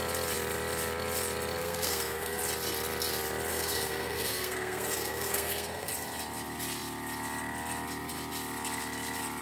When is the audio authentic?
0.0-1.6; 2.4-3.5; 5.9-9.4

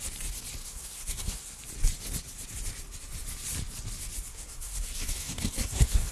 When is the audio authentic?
0.0-0.6; 1.6-4.3